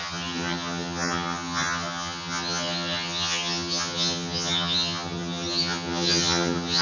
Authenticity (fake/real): fake